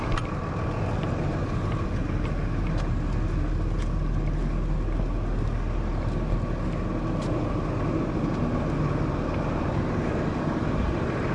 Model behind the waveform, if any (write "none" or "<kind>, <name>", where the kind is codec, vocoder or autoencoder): none